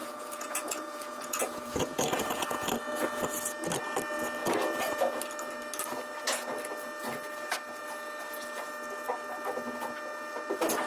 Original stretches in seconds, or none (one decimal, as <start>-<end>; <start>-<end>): 2.7-10.9